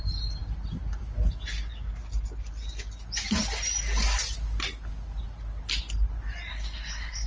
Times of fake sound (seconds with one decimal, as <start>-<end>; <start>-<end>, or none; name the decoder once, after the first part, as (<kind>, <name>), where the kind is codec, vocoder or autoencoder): 6.5-7.3 (codec, SNAC)